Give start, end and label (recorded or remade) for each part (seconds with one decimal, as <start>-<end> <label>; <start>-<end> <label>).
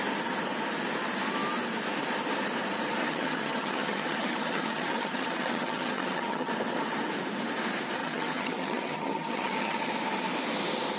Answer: 0.0-3.0 recorded; 3.0-6.5 remade; 6.5-8.0 recorded; 8.0-9.9 remade; 9.9-11.0 recorded